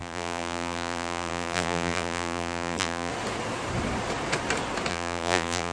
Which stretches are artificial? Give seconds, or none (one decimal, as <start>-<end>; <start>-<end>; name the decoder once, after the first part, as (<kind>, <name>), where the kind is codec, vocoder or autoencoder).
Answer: 0.0-3.1 (vocoder, BigVGAN v2); 4.9-5.7